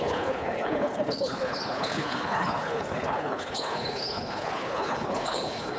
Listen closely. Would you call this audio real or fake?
fake